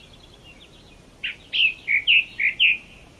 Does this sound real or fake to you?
real